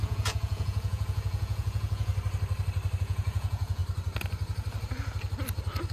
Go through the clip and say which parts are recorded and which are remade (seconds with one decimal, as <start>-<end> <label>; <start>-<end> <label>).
0.0-2.1 remade; 2.1-3.0 recorded; 3.0-3.8 remade; 3.8-5.9 recorded